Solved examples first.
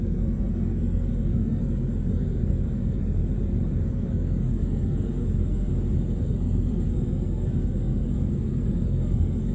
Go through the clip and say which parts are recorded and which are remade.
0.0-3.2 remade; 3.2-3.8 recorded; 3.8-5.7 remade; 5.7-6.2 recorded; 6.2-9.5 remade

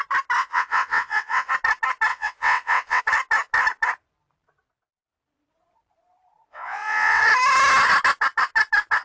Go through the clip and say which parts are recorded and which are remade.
0.0-0.4 recorded; 0.4-1.5 remade; 1.5-2.1 recorded; 2.1-3.0 remade; 3.0-6.5 recorded; 6.5-7.2 remade; 7.2-9.0 recorded

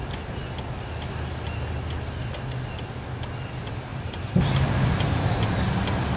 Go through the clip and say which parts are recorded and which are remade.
0.0-3.9 recorded; 3.9-5.3 remade; 5.3-6.2 recorded

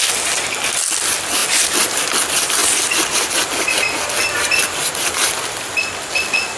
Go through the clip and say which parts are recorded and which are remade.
0.0-6.6 recorded

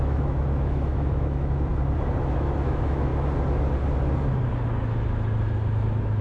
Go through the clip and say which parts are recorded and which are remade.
0.0-1.7 remade; 1.7-2.2 recorded; 2.2-3.1 remade; 3.1-6.2 recorded

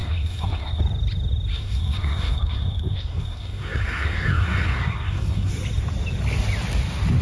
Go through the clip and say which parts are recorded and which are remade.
0.0-0.8 remade; 0.8-1.5 recorded; 1.5-5.5 remade; 5.5-7.2 recorded